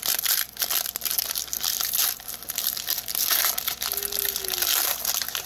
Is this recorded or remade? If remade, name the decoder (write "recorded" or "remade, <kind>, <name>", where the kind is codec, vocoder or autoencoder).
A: recorded